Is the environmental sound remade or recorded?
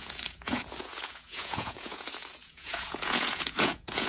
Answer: remade